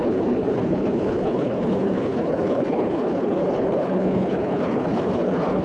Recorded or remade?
remade